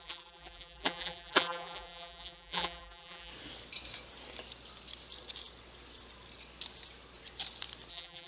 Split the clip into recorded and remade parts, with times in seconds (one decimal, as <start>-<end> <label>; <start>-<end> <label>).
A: 0.0-3.3 remade; 3.3-7.9 recorded; 7.9-8.3 remade